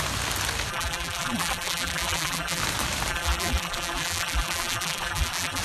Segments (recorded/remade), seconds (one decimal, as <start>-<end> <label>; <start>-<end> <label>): 0.0-0.7 recorded; 0.7-2.6 remade; 2.6-3.1 recorded; 3.1-5.6 remade